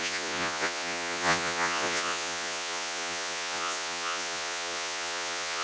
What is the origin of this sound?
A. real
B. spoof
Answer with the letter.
B